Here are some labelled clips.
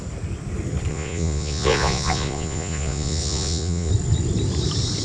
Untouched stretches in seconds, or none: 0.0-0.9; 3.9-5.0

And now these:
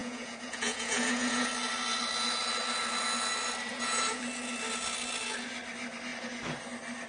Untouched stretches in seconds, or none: 1.5-3.7; 4.2-7.1

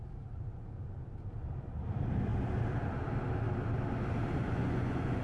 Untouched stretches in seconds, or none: 0.0-4.4

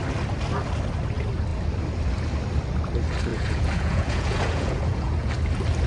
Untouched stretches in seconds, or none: 0.0-3.3; 5.3-5.9

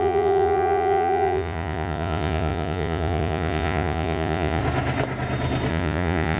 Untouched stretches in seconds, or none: 4.6-5.7